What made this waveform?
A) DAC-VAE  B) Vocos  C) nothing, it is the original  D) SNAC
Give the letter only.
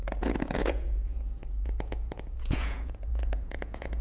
B